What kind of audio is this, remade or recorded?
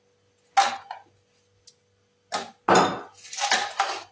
recorded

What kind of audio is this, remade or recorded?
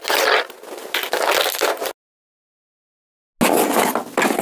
recorded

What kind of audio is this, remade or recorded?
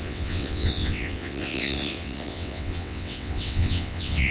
remade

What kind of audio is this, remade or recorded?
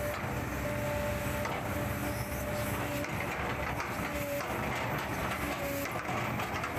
recorded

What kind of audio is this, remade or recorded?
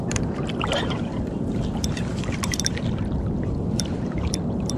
recorded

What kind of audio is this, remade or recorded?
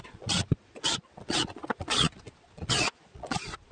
remade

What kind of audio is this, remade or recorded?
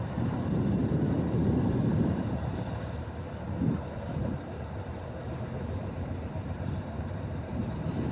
remade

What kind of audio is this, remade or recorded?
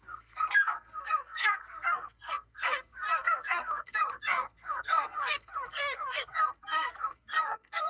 remade